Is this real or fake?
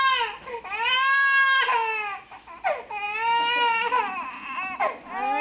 real